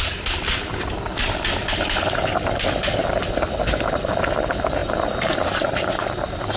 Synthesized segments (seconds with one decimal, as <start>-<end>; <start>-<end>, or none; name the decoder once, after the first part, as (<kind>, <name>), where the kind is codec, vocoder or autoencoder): 3.0-4.2 (vocoder, BigVGAN v2)